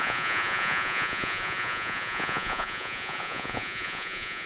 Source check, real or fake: fake